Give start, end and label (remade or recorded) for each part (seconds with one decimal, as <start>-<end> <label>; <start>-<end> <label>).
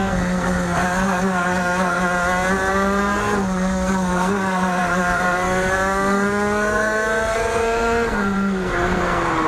0.0-2.0 remade; 2.0-2.7 recorded; 2.7-9.5 remade